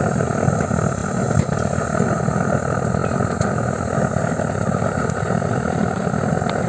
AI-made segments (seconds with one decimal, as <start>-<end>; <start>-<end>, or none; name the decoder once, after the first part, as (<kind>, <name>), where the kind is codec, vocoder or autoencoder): none